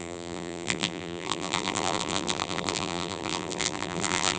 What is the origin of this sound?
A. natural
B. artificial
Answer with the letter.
B